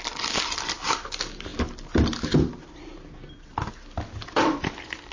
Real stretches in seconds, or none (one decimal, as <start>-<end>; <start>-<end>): 0.0-5.1